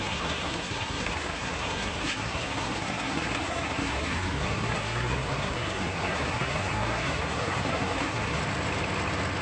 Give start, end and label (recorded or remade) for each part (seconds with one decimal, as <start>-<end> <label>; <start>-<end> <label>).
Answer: 0.0-8.4 remade; 8.4-9.4 recorded